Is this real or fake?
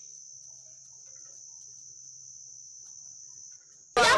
real